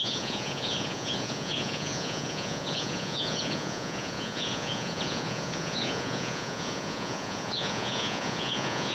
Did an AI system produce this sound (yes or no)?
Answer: yes